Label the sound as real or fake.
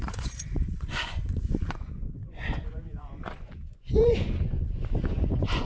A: fake